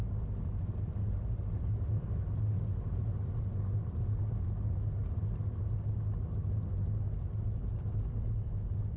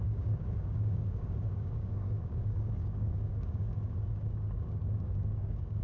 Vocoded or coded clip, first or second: second